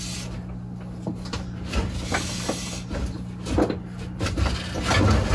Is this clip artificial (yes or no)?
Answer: no